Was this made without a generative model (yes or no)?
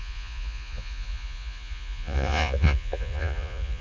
no